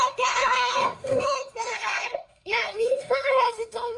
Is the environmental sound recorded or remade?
remade